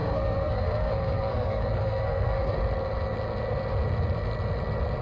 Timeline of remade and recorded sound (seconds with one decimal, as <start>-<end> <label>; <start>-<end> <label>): 0.0-2.6 remade; 2.6-5.0 recorded